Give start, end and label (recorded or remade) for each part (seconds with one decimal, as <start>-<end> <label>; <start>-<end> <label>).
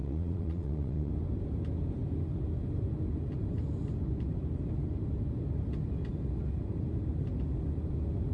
0.0-1.1 remade; 1.1-8.3 recorded